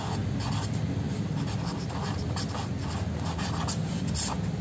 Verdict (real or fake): real